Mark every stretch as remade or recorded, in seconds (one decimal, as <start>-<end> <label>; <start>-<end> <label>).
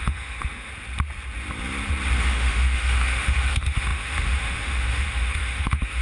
0.0-0.7 remade; 0.7-2.2 recorded; 2.2-6.0 remade